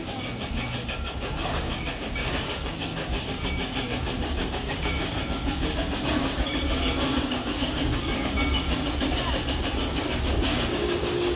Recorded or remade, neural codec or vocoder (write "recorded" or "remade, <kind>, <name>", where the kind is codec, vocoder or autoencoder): remade, codec, DAC